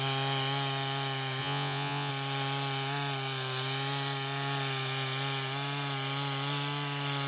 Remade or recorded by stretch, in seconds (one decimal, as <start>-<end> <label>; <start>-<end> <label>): 0.0-1.4 recorded; 1.4-2.1 remade; 2.1-7.3 recorded